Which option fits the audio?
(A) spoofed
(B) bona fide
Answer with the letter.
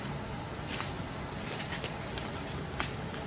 B